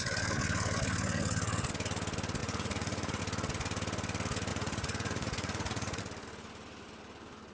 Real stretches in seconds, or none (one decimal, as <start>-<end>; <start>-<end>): 0.0-2.4; 3.2-4.5; 6.0-7.5